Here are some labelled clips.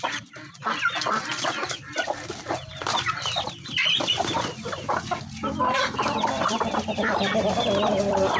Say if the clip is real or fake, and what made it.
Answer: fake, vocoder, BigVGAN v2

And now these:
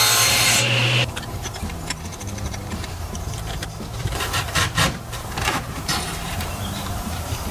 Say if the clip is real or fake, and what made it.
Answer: fake, vocoder, BigVGAN v2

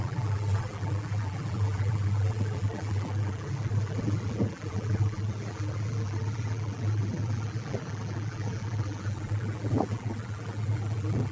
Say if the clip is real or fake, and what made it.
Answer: fake, vocoder, BigVGAN v2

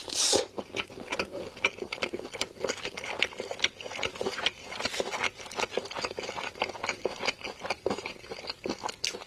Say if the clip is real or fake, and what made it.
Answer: real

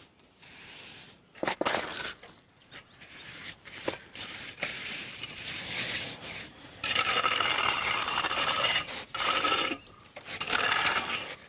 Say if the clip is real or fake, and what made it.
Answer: fake, vocoder, BigVGAN v2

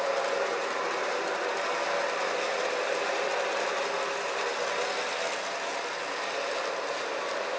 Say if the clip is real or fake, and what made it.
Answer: real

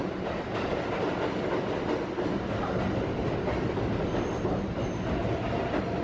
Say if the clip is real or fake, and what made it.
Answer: real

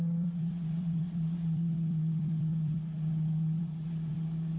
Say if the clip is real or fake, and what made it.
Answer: fake, vocoder, BigVGAN v2